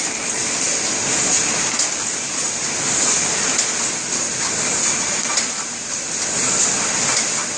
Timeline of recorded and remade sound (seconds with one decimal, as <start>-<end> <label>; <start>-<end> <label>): 0.0-7.6 recorded